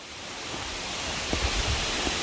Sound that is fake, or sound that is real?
real